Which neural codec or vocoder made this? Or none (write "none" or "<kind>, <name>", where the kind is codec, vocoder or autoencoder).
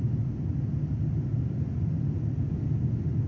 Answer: none